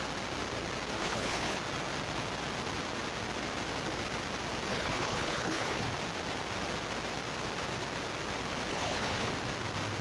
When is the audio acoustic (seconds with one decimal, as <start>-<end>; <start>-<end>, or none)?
0.0-1.0; 1.6-4.7; 5.9-8.7; 9.3-10.0